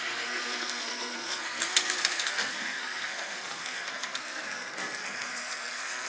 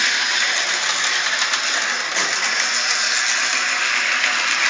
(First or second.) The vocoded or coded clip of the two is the first